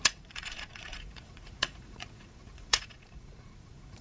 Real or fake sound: fake